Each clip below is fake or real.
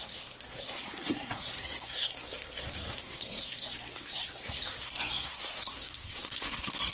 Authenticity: fake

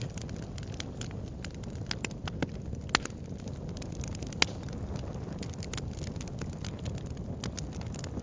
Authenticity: real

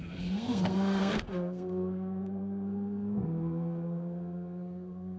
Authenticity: fake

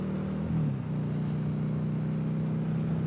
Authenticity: real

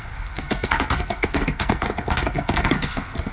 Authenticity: fake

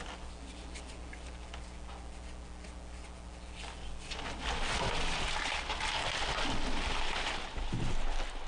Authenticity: real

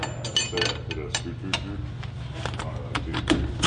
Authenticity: real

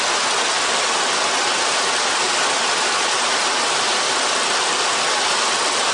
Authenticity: real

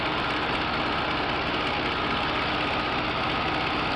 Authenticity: real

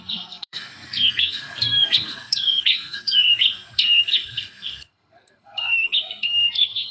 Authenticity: fake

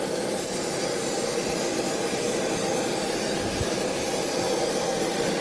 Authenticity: real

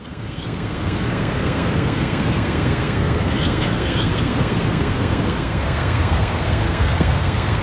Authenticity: fake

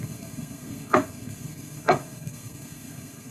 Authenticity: fake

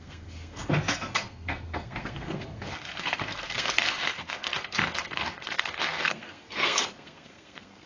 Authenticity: fake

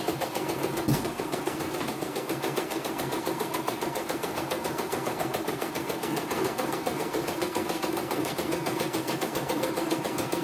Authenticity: fake